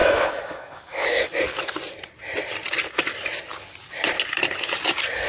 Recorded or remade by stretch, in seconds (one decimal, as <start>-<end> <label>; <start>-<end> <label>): 0.0-1.2 remade; 1.2-5.3 recorded